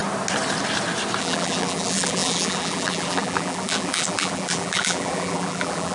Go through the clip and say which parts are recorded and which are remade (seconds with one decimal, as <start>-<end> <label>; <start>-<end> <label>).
0.0-1.2 recorded; 1.2-5.9 remade